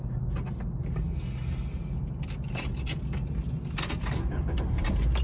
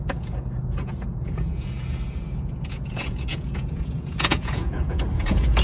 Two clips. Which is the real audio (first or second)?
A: first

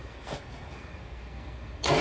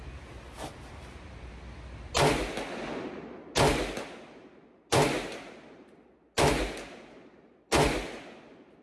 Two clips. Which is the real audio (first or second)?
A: second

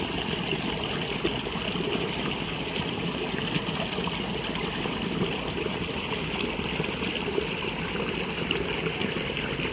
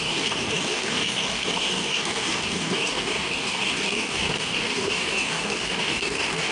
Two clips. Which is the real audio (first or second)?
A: first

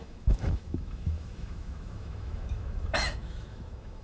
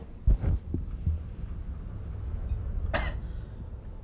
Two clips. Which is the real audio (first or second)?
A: second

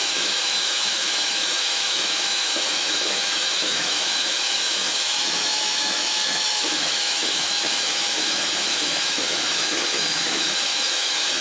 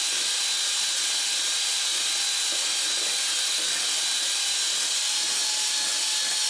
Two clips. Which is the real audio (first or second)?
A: second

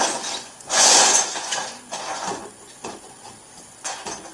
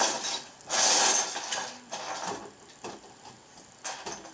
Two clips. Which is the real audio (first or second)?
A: second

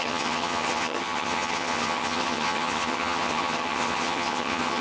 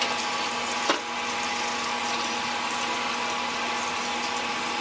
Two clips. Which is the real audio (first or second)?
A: second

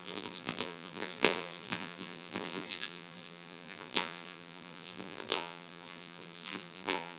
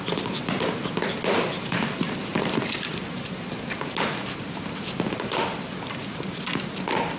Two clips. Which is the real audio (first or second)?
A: second